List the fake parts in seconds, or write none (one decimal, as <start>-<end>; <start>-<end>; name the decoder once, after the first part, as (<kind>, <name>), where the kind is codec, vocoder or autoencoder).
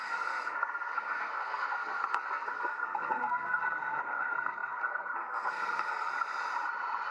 0.0-6.1 (codec, SNAC)